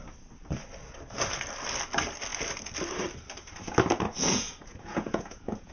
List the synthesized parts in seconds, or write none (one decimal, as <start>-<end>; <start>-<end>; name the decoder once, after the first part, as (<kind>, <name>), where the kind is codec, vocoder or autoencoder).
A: 4.1-5.7 (vocoder, Vocos)